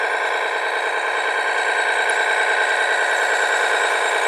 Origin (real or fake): real